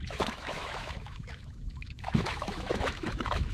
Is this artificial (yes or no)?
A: yes